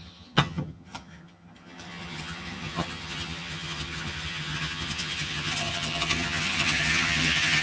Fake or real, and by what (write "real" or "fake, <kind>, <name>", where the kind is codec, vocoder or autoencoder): fake, vocoder, HiFi-GAN